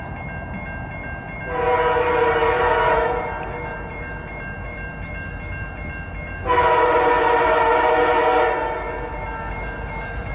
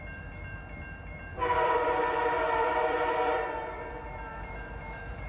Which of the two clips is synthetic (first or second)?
second